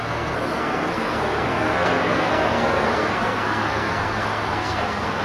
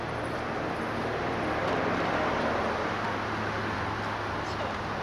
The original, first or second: second